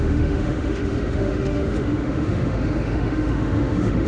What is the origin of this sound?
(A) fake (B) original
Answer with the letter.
A